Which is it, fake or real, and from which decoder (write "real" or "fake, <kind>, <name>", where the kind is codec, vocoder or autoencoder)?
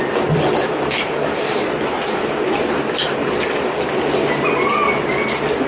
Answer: real